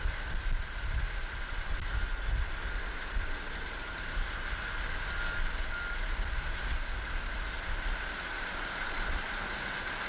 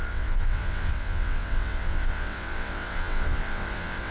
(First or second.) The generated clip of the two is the second